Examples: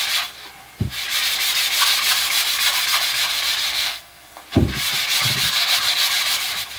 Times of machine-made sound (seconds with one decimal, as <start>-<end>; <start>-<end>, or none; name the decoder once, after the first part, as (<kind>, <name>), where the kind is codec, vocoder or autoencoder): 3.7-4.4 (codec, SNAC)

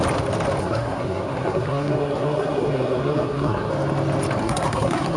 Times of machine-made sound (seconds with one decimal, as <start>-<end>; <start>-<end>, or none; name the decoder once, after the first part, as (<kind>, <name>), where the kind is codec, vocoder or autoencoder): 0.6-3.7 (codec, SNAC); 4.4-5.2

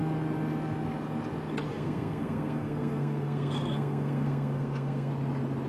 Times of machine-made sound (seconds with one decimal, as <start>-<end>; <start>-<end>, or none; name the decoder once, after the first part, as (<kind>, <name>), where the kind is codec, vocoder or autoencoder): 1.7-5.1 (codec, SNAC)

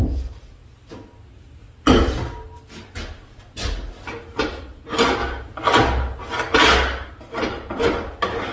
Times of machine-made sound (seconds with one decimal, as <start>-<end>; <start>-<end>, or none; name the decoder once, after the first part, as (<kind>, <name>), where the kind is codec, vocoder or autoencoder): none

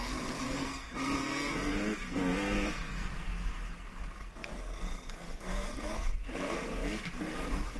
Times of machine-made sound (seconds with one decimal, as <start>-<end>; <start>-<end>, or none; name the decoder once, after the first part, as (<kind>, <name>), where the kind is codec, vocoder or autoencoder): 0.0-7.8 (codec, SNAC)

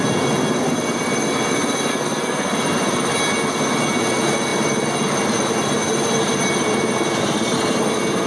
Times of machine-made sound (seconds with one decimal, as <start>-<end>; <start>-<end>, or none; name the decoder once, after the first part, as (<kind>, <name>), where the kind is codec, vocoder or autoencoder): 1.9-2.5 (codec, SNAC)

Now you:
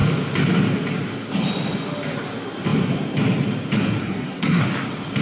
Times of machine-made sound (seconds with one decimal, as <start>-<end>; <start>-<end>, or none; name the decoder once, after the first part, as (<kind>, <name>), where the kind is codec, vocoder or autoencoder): 4.0-4.6 (codec, SNAC)

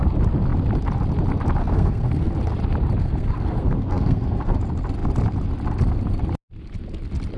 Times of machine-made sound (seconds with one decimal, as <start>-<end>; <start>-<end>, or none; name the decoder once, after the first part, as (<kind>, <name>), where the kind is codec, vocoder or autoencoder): 1.6-2.3 (codec, SNAC); 3.0-4.6